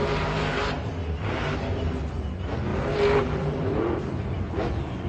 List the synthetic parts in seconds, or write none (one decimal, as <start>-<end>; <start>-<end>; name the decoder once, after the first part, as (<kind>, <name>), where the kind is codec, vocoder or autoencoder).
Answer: 0.0-0.9 (vocoder, BigVGAN v2); 2.7-5.1